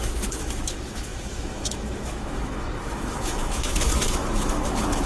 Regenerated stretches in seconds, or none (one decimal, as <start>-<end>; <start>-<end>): 0.0-5.1